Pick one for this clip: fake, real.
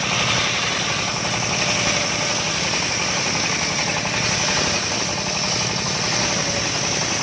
real